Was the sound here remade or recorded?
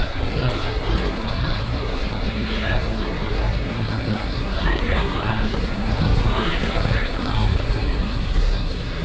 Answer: remade